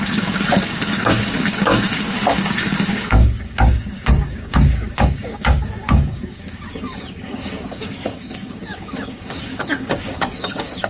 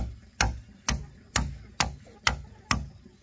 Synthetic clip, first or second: first